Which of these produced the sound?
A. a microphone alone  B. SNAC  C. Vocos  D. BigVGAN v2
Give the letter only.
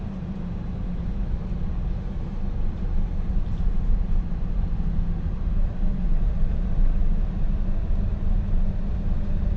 D